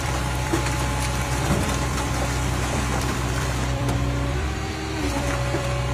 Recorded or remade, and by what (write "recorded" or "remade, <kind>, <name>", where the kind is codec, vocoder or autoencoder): remade, vocoder, BigVGAN v2